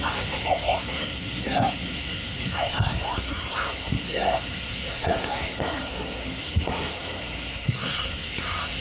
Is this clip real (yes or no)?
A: no